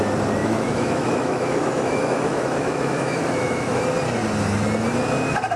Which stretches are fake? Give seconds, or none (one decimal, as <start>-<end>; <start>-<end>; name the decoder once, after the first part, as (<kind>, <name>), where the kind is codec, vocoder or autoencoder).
0.4-3.8 (autoencoder, DAC-VAE)